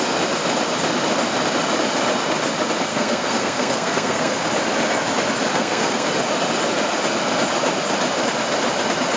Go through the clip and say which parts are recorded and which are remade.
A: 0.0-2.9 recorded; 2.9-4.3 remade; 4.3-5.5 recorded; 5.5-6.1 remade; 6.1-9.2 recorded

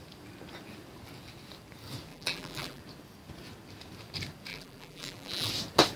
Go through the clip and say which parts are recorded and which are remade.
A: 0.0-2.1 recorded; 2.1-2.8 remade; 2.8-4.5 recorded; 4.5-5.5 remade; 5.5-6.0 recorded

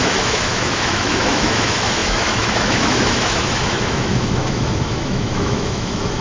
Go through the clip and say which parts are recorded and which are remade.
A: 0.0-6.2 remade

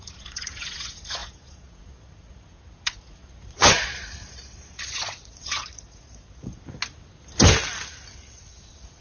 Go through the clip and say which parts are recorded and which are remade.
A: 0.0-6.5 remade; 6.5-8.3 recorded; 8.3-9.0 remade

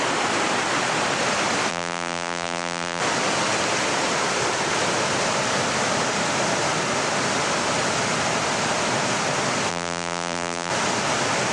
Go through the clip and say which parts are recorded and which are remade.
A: 0.0-1.7 recorded; 1.7-3.0 remade; 3.0-9.7 recorded; 9.7-10.7 remade; 10.7-11.5 recorded